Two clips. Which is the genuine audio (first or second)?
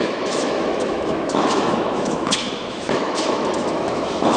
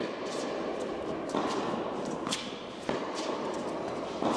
second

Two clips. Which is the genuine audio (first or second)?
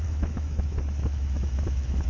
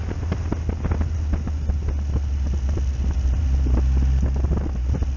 second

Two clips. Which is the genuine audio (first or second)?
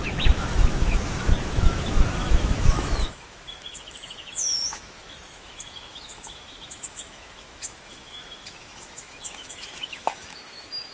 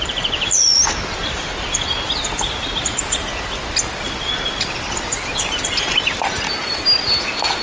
second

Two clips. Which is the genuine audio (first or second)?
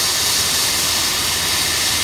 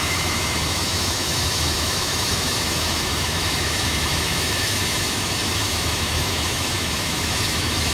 first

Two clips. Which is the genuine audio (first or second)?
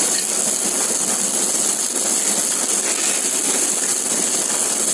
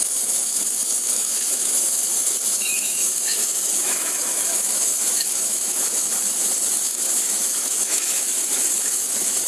first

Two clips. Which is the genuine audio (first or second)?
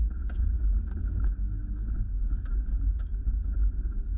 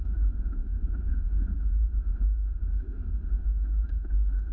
first